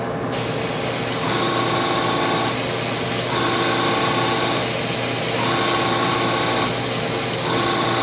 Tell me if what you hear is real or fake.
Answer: real